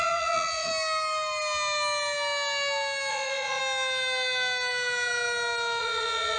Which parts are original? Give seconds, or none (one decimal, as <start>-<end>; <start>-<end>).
0.7-3.1; 3.6-5.8